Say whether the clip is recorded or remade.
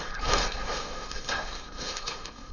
remade